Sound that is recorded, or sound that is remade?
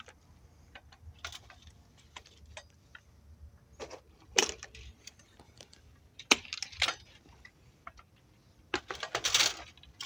recorded